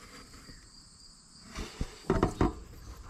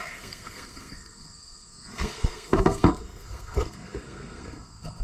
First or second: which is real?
first